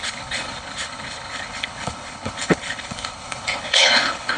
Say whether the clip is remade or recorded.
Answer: remade